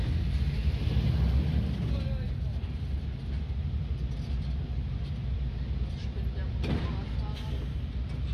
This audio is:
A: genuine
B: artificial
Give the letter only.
A